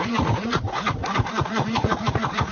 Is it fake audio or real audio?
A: fake